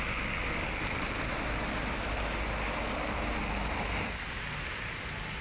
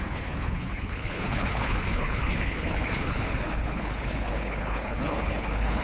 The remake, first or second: second